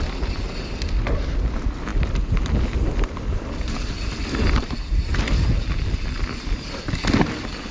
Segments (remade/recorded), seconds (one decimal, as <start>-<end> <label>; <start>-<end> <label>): 0.0-7.7 recorded